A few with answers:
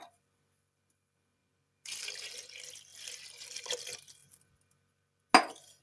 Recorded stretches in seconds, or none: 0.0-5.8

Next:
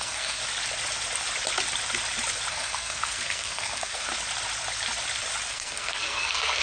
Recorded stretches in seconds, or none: 0.4-2.5; 4.1-5.5

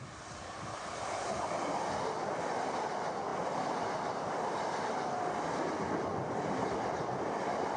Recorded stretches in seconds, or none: 0.0-7.8

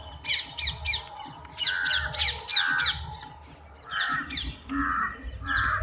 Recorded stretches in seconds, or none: 0.0-5.8

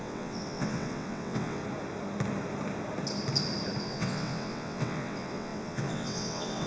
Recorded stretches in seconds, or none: 1.6-3.8

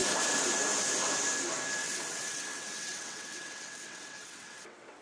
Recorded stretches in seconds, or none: 0.0-1.8

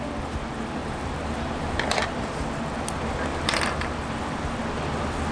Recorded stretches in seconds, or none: 0.0-0.8; 2.1-3.3; 4.0-5.3

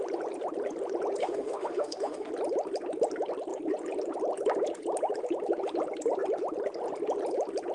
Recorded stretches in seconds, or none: 0.0-1.2; 2.3-7.7